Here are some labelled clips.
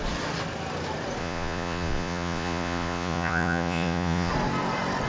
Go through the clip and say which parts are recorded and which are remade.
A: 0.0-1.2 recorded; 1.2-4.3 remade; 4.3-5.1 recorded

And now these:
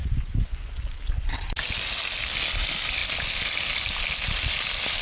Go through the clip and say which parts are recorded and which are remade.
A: 0.0-0.7 remade; 0.7-5.0 recorded

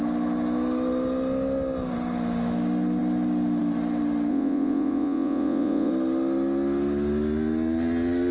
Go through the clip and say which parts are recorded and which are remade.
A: 0.0-4.3 recorded; 4.3-5.9 remade; 5.9-8.3 recorded

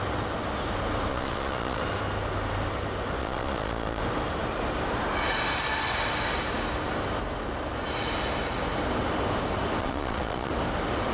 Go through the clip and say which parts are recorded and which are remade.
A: 0.0-1.1 recorded; 1.1-1.8 remade; 1.8-3.2 recorded; 3.2-4.0 remade; 4.0-9.8 recorded; 9.8-10.5 remade; 10.5-11.1 recorded

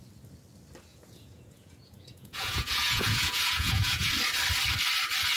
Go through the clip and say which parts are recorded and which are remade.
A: 0.0-0.9 recorded; 0.9-4.1 remade; 4.1-5.4 recorded